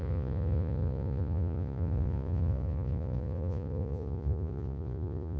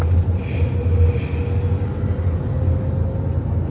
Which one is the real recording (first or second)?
second